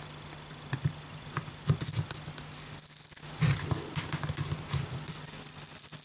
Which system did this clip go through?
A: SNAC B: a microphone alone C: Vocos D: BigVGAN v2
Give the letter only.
B